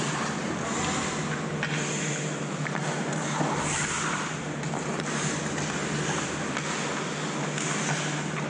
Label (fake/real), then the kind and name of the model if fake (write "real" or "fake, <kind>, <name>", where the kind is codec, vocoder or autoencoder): real